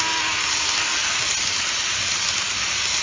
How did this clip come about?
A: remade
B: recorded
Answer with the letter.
B